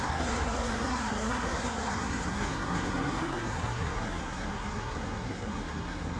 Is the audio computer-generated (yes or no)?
yes